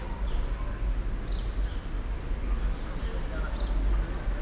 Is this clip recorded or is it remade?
recorded